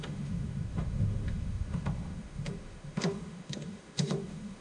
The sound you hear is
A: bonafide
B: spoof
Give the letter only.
B